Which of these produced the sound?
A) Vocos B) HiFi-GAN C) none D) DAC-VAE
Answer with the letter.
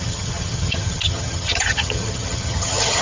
B